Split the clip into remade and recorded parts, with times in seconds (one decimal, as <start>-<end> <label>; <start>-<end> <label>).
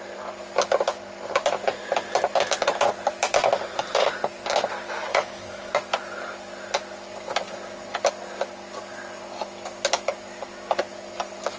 0.0-5.1 recorded; 5.1-5.7 remade; 5.7-11.6 recorded